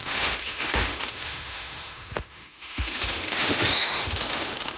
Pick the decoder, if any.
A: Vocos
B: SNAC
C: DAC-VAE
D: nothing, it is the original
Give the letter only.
C